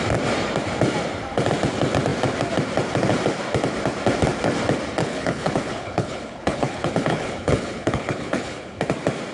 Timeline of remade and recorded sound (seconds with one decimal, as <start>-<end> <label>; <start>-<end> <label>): 0.0-5.0 recorded; 5.0-8.8 remade; 8.8-9.3 recorded